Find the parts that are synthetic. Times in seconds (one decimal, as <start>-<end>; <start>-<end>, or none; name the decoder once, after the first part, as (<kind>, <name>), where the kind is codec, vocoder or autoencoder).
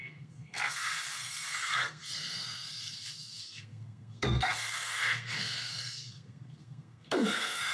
0.0-7.7 (codec, SNAC)